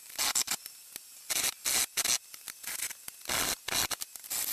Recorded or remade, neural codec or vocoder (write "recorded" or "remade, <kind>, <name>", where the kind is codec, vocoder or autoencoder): recorded